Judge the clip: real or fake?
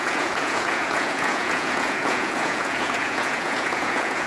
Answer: fake